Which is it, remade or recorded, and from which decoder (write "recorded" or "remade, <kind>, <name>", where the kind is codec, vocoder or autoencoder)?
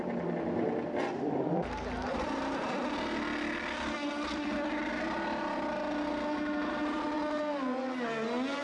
recorded